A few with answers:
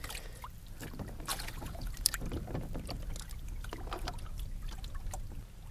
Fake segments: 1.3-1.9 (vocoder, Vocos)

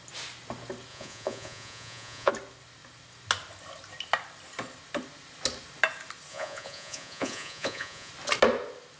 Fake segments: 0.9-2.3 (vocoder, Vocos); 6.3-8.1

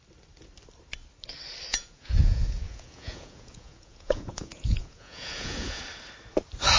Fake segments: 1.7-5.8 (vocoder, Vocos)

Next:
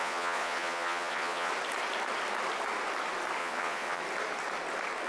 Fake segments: 0.0-1.5 (vocoder, Vocos); 3.4-4.0

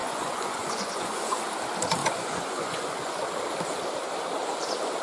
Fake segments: 0.0-1.4 (vocoder, Vocos); 2.0-3.3

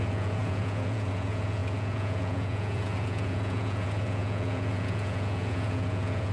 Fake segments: 0.0-6.3 (vocoder, Vocos)

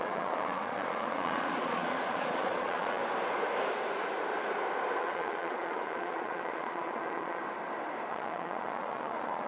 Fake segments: 0.0-3.0 (vocoder, Vocos); 5.0-7.4; 8.1-9.5